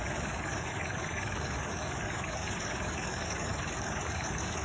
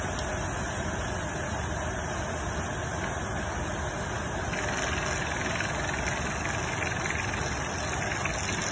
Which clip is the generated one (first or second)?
first